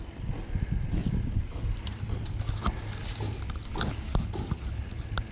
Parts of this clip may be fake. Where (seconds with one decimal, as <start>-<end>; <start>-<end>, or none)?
1.0-2.2

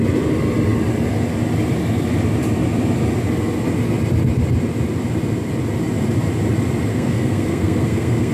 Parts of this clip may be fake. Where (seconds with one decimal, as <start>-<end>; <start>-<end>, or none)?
6.9-8.3

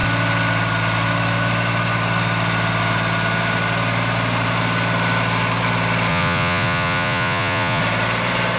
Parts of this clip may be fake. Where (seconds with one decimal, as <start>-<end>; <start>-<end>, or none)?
6.1-7.8

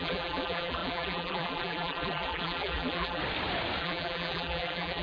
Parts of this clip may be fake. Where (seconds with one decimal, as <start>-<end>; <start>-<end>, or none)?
0.0-3.2; 3.8-5.0

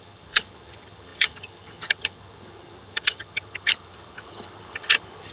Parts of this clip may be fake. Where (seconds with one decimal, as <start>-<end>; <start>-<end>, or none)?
0.0-5.3

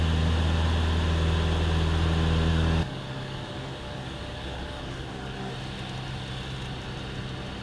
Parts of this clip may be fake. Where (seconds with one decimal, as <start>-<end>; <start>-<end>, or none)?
2.5-5.5